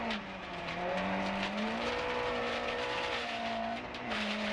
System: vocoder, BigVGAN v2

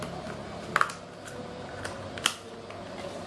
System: none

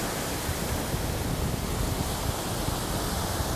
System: none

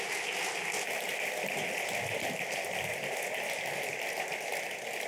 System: none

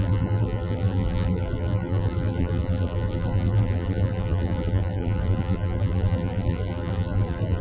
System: vocoder, BigVGAN v2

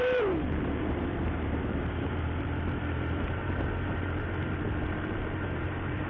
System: vocoder, BigVGAN v2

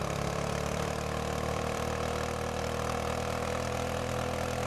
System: vocoder, BigVGAN v2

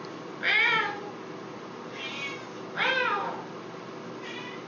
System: none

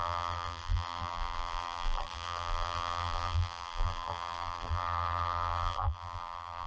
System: vocoder, BigVGAN v2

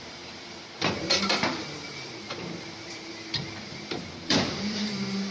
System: vocoder, BigVGAN v2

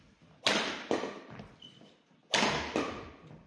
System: none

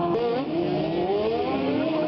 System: vocoder, BigVGAN v2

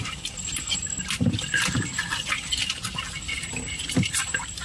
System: none